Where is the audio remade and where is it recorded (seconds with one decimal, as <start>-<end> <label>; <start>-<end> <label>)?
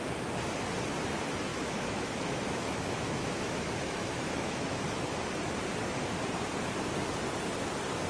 0.0-1.5 recorded; 1.5-4.8 remade; 4.8-8.1 recorded